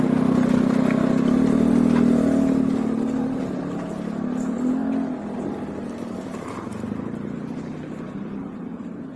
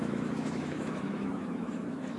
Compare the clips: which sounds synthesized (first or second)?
second